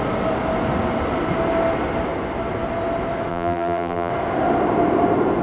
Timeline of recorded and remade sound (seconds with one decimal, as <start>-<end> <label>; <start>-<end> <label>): 0.0-3.3 recorded; 3.3-4.1 remade; 4.1-5.4 recorded